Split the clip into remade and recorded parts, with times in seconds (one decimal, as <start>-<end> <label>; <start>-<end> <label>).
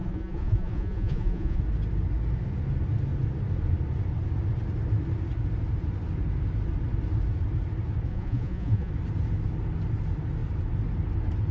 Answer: 0.0-1.6 remade; 1.6-8.1 recorded; 8.1-8.9 remade; 8.9-11.5 recorded